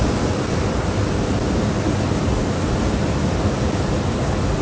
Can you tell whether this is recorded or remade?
recorded